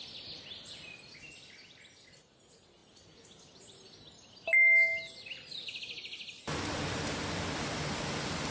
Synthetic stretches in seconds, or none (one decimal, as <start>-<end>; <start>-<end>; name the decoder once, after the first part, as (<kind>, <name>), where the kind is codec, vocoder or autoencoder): none